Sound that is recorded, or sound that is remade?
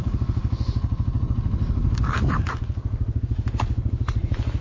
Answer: recorded